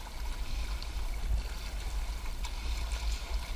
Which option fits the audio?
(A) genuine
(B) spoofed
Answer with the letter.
A